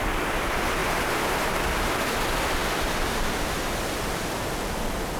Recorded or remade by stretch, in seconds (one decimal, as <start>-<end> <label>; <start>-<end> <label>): 0.0-5.2 recorded